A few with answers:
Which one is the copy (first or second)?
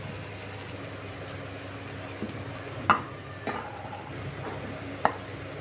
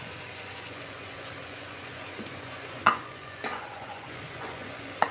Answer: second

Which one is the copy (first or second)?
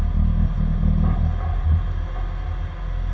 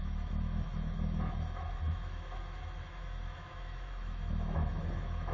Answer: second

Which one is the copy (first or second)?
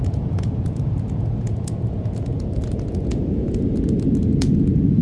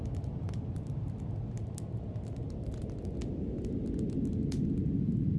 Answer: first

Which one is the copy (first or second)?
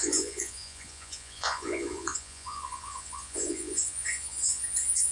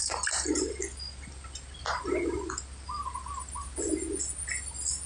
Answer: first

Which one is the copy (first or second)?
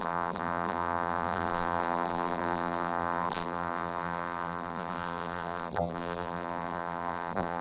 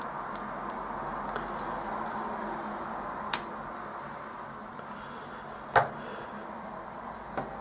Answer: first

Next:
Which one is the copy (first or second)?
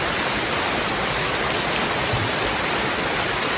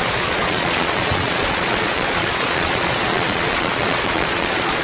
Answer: second